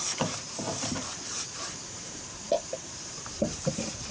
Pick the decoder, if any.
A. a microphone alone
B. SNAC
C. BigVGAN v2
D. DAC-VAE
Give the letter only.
C